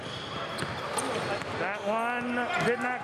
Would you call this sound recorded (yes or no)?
yes